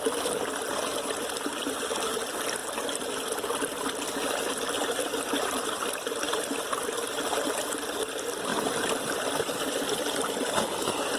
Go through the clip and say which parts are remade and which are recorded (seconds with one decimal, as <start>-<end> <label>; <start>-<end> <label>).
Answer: 0.0-11.2 recorded